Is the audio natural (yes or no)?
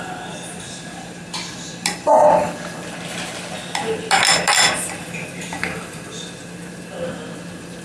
yes